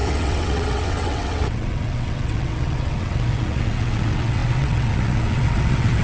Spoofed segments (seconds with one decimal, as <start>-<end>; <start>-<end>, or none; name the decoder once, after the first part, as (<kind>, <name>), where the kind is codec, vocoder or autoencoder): 0.0-6.0 (vocoder, WaveNeXt)